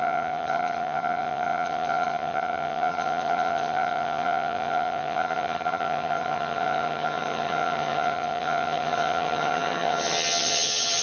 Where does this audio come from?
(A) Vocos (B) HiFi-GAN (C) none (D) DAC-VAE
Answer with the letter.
B